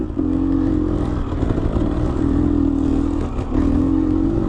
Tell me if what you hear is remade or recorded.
recorded